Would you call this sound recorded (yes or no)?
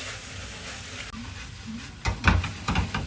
yes